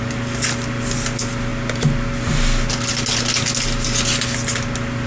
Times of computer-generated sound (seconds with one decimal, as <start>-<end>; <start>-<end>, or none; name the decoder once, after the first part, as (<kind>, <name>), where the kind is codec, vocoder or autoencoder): none